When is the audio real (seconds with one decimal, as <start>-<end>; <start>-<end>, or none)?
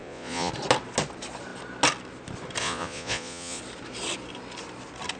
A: 0.5-2.6; 3.6-5.2